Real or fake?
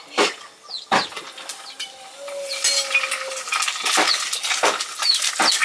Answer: real